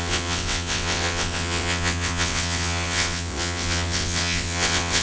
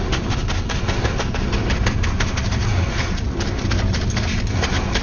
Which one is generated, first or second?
first